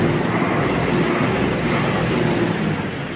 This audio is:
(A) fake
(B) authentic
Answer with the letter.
B